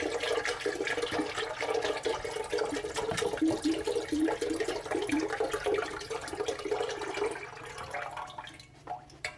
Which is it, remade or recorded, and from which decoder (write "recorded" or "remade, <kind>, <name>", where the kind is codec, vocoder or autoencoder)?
recorded